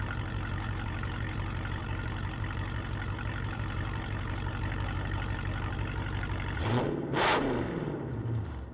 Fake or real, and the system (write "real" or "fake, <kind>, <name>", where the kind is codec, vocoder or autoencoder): fake, vocoder, BigVGAN v2